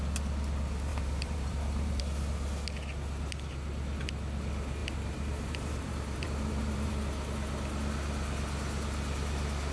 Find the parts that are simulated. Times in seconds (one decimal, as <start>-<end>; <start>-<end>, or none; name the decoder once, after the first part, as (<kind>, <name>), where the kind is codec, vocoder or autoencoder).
0.9-2.0 (vocoder, BigVGAN v2); 4.8-6.9